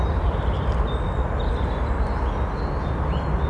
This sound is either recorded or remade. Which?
recorded